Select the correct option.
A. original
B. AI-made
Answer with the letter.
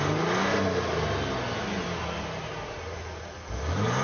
A